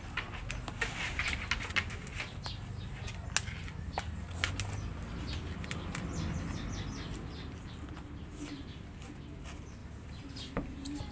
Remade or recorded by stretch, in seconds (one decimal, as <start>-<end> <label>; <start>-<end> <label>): 0.0-11.1 recorded